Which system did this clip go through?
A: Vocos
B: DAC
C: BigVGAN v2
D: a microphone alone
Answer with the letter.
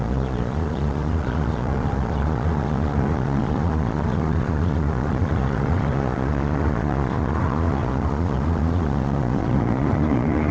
A